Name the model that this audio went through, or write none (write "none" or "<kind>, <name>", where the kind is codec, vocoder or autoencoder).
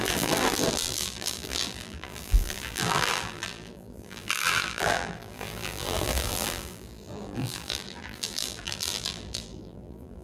vocoder, BigVGAN v2